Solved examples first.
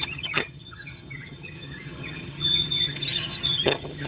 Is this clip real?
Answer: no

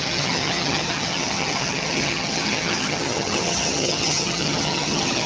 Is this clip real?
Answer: no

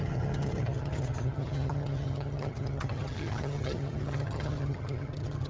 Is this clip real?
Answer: no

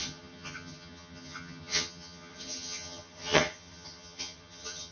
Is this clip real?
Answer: no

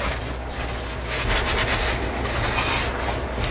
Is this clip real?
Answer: yes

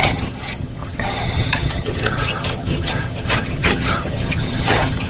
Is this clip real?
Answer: no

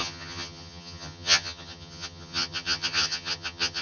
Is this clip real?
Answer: no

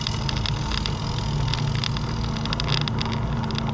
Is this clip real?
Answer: yes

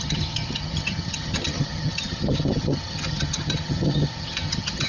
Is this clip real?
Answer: no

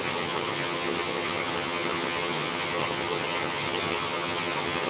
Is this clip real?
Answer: no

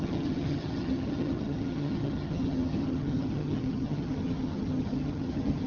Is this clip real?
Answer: no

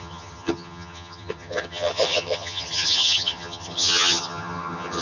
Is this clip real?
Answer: no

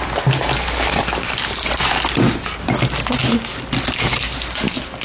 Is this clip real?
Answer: yes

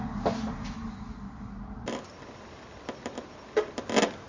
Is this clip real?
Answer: yes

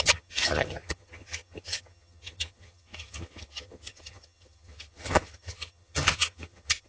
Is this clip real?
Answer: no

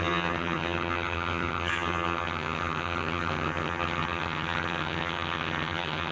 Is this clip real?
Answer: no